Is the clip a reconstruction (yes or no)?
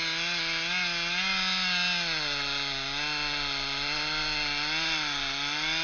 no